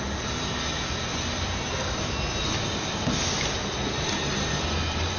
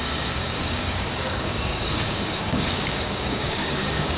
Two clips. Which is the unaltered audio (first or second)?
first